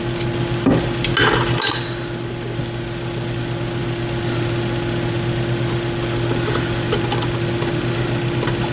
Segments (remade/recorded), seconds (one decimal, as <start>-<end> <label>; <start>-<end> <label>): 0.0-8.7 recorded